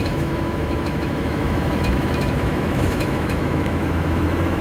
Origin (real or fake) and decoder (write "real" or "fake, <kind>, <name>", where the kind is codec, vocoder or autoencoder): fake, autoencoder, DAC-VAE